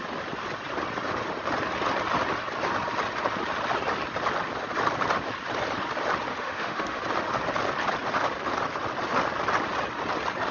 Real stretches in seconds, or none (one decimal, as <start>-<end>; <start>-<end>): 0.0-6.3; 7.0-10.5